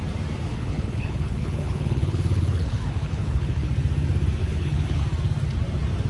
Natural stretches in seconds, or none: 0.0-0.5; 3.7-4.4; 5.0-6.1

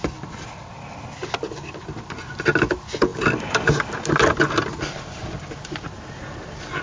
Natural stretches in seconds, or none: 0.0-6.8

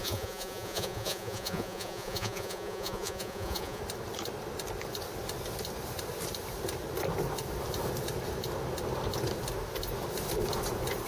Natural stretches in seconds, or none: 3.8-11.1